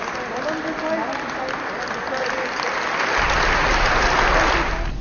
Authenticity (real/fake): real